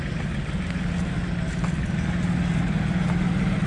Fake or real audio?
real